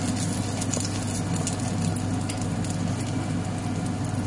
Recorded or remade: recorded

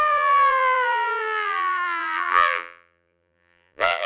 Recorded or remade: remade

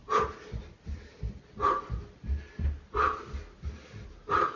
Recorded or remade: recorded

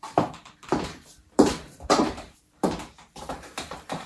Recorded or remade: remade